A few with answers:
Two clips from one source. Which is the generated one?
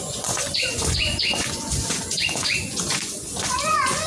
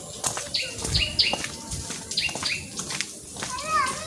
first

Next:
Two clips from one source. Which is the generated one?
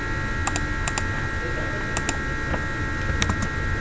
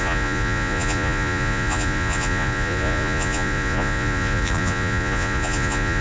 second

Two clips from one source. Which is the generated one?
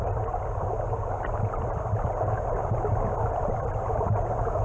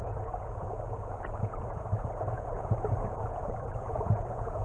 second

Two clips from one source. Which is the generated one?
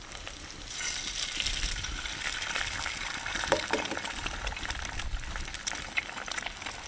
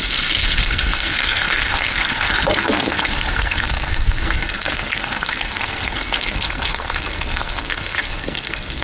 second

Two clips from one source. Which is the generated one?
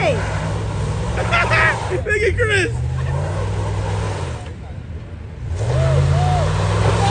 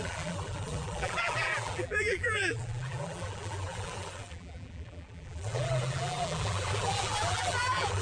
second